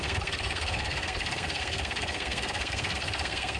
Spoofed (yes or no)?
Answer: yes